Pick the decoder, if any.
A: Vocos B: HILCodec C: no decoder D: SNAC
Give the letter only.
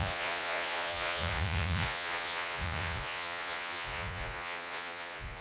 A